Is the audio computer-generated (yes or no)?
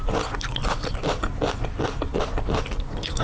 no